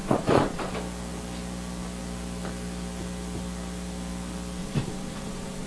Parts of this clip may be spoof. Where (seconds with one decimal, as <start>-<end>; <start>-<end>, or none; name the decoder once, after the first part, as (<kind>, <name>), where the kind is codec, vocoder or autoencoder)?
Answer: 0.0-0.7 (vocoder, Vocos); 4.6-5.7

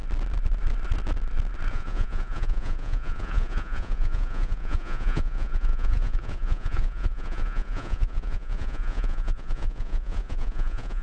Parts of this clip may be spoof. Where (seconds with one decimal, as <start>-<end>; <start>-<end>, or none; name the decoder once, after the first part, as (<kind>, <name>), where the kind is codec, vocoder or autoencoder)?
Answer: 1.7-11.0 (vocoder, Vocos)

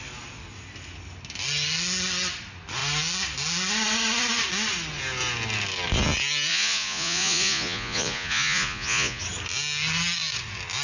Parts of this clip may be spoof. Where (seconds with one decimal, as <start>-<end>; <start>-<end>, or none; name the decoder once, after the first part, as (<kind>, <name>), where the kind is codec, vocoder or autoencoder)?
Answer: 6.5-9.2 (vocoder, Vocos)

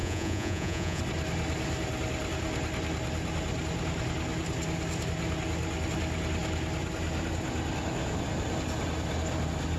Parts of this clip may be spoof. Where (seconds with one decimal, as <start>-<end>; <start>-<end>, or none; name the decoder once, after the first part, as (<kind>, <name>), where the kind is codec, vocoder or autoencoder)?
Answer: 0.0-1.0 (vocoder, Vocos)